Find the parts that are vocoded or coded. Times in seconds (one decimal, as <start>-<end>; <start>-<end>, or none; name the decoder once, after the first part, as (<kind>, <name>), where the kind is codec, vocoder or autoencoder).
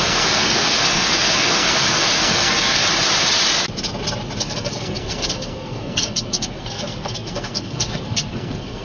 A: 0.0-2.8 (codec, SNAC); 4.4-8.8